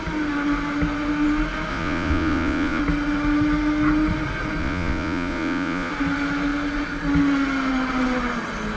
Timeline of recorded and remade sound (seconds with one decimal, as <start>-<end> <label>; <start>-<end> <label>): 0.0-1.7 recorded; 1.7-2.8 remade; 2.8-4.6 recorded; 4.6-5.9 remade; 5.9-8.8 recorded